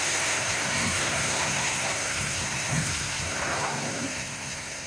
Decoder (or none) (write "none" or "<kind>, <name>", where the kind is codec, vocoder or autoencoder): codec, SNAC